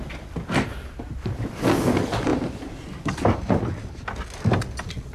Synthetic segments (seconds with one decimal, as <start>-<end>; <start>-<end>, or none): 0.7-1.5; 2.3-3.7